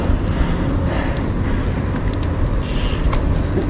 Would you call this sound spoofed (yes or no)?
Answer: no